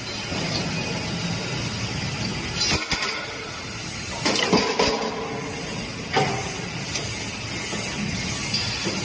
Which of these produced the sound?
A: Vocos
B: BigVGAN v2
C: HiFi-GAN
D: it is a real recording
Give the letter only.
D